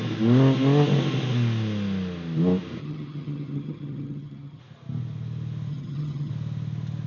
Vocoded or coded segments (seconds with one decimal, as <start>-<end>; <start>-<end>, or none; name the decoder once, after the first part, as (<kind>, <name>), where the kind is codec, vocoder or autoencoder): 2.8-4.6 (vocoder, HiFi-GAN); 5.7-6.3